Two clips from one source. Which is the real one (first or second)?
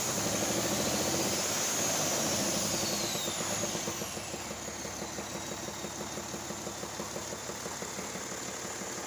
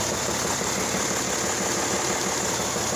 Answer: first